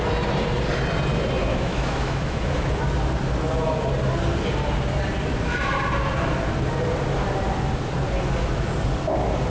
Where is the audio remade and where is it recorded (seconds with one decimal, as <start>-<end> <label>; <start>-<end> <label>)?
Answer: 0.0-1.5 recorded; 1.5-2.6 remade; 2.6-9.5 recorded